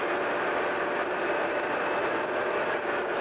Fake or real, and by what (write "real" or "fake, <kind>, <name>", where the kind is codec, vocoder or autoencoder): real